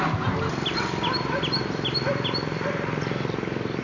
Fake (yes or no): no